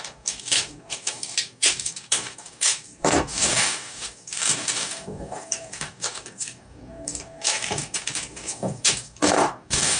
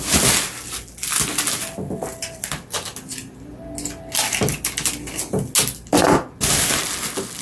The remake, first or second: first